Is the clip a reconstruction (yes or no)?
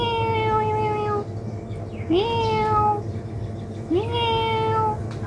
no